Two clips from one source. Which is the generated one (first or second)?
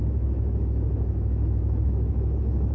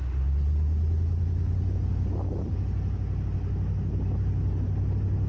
first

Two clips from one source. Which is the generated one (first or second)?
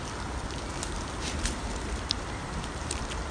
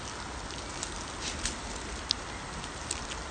first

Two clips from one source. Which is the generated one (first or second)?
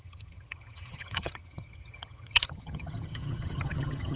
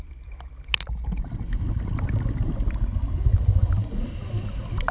first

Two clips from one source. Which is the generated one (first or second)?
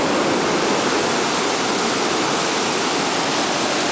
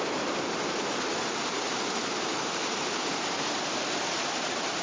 second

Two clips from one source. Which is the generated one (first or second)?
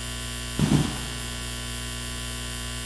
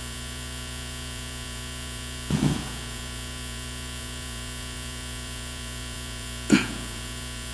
second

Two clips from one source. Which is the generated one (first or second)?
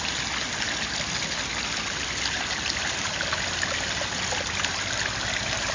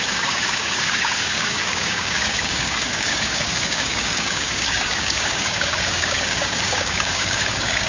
second